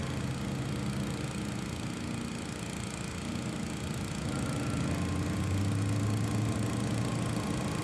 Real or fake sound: real